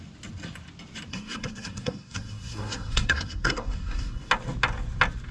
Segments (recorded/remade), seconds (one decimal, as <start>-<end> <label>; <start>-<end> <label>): 0.0-1.1 recorded; 1.1-4.3 remade; 4.3-5.3 recorded